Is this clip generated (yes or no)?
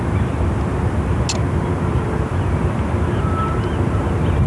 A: no